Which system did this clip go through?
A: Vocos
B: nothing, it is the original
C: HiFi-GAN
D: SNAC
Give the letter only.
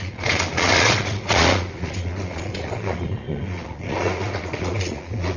A